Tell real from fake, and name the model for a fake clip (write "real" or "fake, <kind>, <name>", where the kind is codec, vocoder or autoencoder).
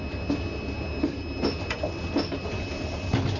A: real